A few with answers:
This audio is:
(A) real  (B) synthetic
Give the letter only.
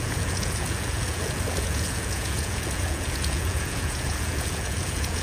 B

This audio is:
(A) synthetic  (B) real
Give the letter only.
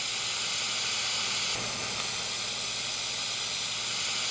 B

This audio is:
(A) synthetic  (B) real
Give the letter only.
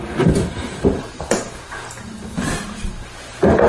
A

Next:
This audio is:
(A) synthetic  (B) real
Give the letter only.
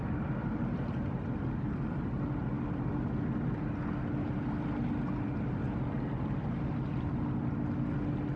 B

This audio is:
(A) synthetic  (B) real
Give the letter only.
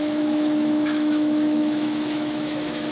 A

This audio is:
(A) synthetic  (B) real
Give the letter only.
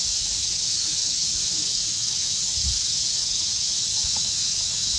A